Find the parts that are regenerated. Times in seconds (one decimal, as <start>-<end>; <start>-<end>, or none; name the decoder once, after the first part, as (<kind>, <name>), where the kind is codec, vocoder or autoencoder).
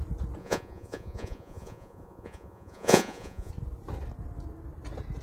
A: 0.4-3.5 (vocoder, Vocos)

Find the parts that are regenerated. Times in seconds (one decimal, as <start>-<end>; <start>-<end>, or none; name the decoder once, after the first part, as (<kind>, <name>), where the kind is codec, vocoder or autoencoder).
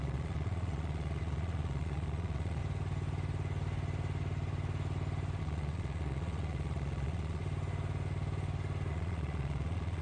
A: 0.0-2.6 (vocoder, Vocos); 5.4-7.4; 8.9-10.0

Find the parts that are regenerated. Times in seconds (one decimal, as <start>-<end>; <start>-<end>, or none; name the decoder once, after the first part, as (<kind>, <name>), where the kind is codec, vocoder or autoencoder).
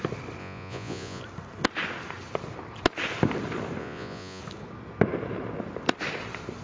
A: 0.4-1.2 (vocoder, Vocos); 3.8-4.4